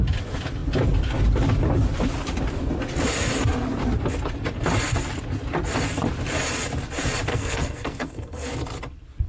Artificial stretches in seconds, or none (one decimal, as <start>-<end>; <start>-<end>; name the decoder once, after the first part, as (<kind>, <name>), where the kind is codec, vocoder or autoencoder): 7.3-8.5 (codec, SNAC)